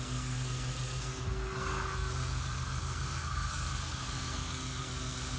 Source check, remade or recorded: remade